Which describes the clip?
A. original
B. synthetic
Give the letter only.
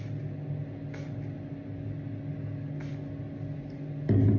A